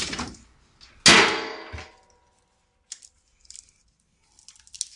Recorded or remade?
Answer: recorded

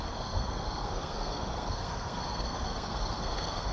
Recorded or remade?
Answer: remade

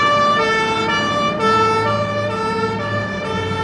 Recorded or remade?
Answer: recorded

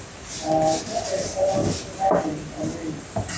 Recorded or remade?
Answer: recorded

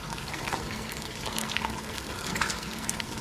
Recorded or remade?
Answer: remade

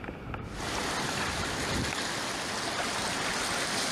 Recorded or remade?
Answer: recorded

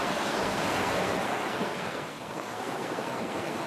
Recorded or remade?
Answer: remade